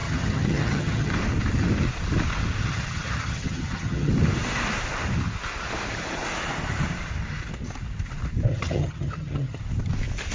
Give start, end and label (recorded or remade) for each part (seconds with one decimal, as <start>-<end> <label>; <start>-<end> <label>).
0.0-1.1 remade; 1.1-2.6 recorded; 2.6-4.1 remade; 4.1-8.5 recorded; 8.5-9.6 remade; 9.6-10.3 recorded